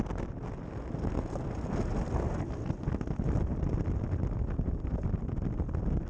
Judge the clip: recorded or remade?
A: recorded